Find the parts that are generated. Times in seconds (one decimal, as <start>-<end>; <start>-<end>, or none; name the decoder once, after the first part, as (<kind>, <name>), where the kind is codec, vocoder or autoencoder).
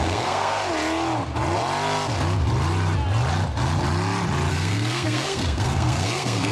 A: 0.0-0.6 (codec, SNAC); 4.5-6.5